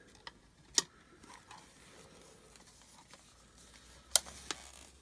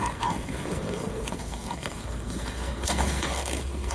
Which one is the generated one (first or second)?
second